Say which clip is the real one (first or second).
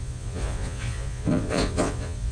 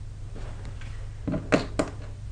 second